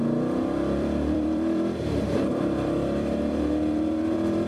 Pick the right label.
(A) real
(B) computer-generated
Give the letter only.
B